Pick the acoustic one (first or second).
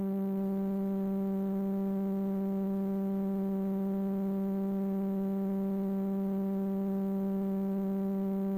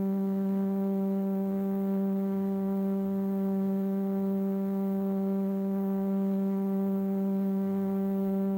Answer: first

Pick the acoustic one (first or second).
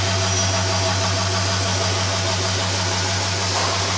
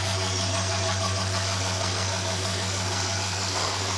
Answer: first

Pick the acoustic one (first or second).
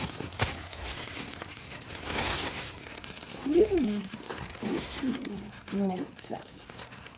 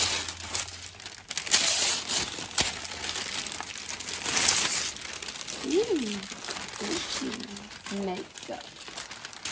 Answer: second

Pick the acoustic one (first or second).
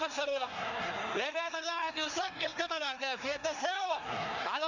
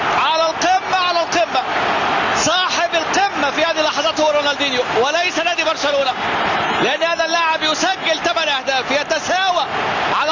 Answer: second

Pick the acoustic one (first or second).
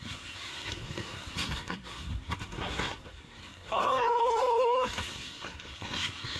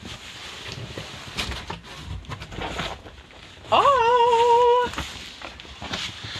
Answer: second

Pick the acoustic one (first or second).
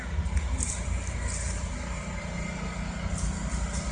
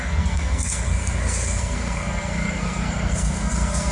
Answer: first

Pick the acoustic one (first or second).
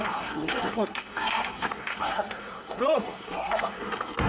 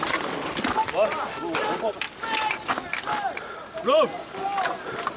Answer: second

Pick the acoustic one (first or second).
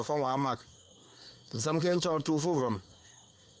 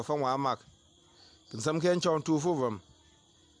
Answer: second